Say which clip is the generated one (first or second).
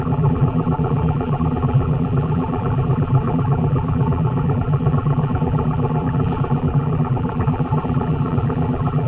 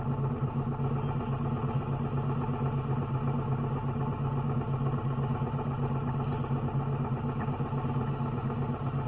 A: first